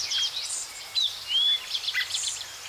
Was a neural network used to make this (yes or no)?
yes